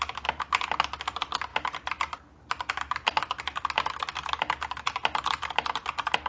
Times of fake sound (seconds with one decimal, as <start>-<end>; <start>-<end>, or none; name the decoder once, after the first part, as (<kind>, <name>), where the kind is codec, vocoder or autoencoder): none